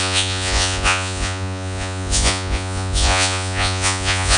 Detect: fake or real fake